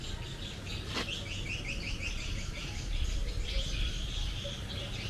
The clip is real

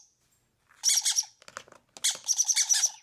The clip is real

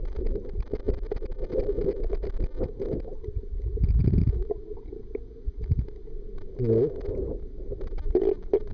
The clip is real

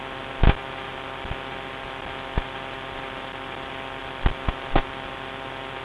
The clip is real